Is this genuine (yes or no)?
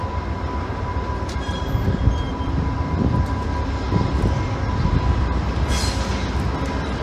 yes